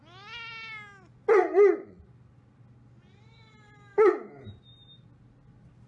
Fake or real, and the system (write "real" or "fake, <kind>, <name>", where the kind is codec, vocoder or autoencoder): real